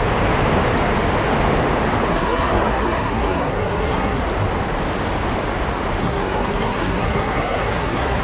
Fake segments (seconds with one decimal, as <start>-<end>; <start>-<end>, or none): 2.1-4.2; 6.0-8.2